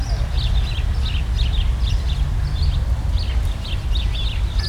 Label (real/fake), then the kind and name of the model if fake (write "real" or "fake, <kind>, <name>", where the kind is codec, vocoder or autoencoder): real